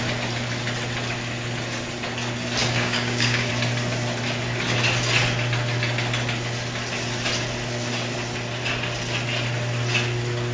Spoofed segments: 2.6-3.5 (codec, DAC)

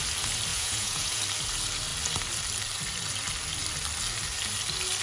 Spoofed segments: 0.5-1.2 (vocoder, Vocos)

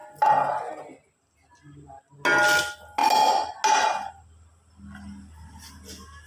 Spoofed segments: none

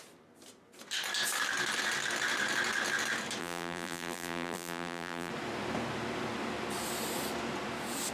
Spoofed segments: 3.4-5.3 (vocoder, BigVGAN v2)

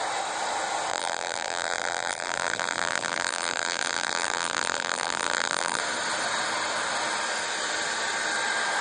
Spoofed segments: 0.9-5.8 (vocoder, BigVGAN v2)

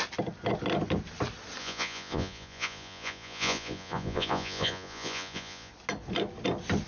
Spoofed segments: 1.6-5.7 (vocoder, Vocos)

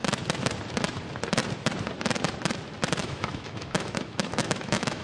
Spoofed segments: 3.0-5.0 (autoencoder, DAC-VAE)

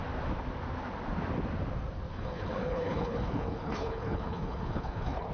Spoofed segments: 2.1-5.3 (codec, HILCodec)